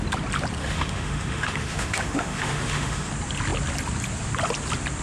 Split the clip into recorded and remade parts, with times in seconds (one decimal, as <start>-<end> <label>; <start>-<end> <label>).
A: 0.0-0.6 recorded; 0.6-3.1 remade; 3.1-5.0 recorded